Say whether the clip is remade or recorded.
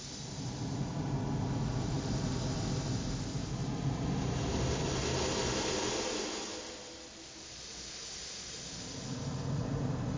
recorded